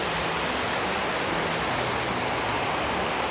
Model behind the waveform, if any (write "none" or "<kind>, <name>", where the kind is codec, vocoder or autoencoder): none